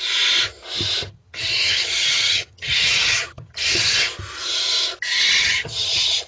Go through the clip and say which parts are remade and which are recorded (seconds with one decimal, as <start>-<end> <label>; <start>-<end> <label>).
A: 0.0-1.1 recorded; 1.1-4.1 remade; 4.1-5.4 recorded; 5.4-6.3 remade